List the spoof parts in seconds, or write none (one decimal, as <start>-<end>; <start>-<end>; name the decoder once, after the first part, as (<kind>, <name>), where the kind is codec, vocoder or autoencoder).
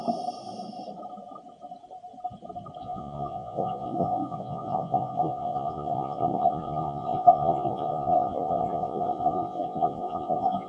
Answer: 2.8-10.7 (vocoder, Vocos)